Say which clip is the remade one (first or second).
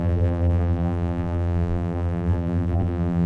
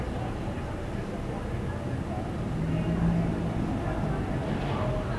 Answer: first